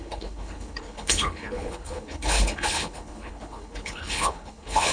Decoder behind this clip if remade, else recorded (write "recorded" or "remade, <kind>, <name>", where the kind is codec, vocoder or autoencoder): remade, codec, HILCodec